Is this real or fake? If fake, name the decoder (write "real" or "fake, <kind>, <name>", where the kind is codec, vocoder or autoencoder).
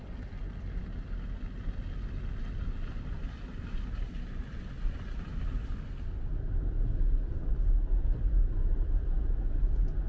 real